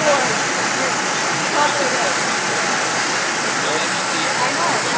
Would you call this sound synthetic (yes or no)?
no